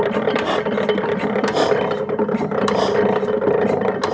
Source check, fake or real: fake